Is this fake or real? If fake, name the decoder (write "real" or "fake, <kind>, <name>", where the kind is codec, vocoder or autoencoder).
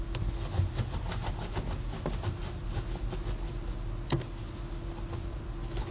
real